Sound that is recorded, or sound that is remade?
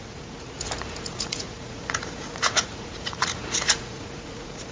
remade